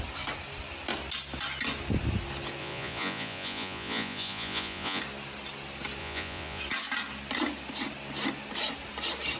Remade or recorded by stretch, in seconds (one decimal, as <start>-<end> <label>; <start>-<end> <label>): 0.0-2.6 recorded; 2.6-5.0 remade; 5.0-6.0 recorded; 6.0-6.6 remade; 6.6-9.4 recorded

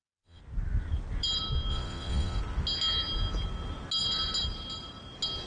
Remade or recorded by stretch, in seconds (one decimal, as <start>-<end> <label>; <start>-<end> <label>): 0.0-0.4 remade; 0.4-1.7 recorded; 1.7-2.4 remade; 2.4-5.5 recorded

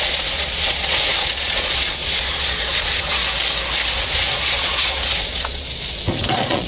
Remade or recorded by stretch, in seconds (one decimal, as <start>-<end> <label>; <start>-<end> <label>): 0.0-3.2 remade; 3.2-3.9 recorded; 3.9-6.7 remade

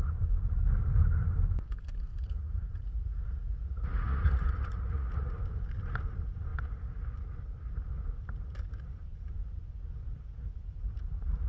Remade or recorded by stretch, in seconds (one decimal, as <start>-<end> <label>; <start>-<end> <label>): 0.0-2.1 recorded; 2.1-5.4 remade; 5.4-11.5 recorded

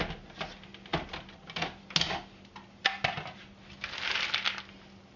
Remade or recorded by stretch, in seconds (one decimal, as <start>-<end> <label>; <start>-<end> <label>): 0.0-5.2 recorded

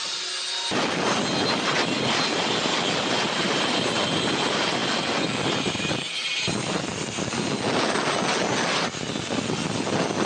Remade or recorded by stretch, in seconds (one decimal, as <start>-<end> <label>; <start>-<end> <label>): 0.0-10.3 recorded